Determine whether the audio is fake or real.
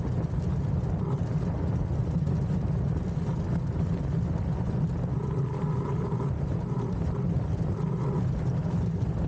real